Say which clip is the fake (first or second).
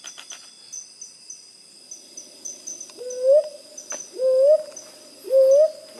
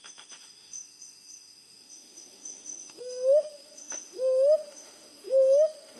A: second